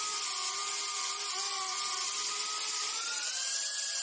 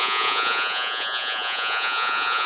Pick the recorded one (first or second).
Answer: first